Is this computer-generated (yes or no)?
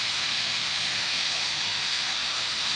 yes